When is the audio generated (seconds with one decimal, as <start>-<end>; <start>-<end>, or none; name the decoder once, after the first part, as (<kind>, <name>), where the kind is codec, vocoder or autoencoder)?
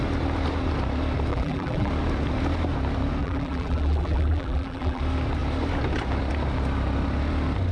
1.3-1.9 (vocoder, BigVGAN v2); 3.2-5.0